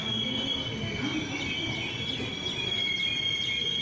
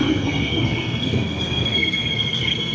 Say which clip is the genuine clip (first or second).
first